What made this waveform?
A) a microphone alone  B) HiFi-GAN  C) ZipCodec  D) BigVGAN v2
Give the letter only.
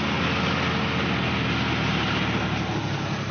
A